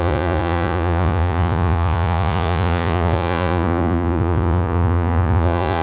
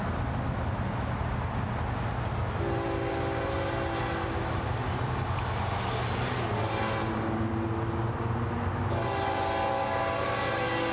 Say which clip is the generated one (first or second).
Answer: first